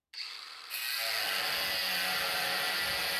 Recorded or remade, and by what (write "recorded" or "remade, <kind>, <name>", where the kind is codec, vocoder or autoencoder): recorded